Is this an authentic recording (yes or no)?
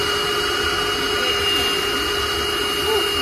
yes